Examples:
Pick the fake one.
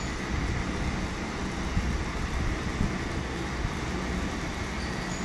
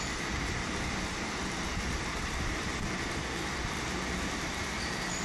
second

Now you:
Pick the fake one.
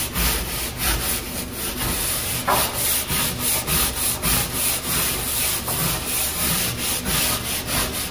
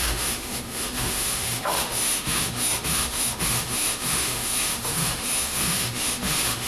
second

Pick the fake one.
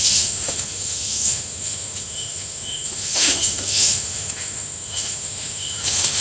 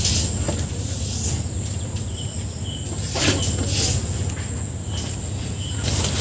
first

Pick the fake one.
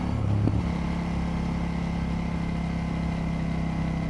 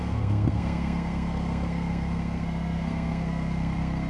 second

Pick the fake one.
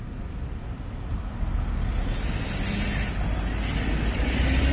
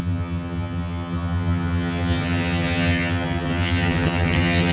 second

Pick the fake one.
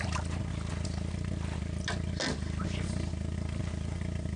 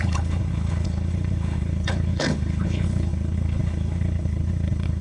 second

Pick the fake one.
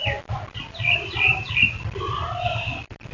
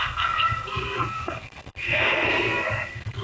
second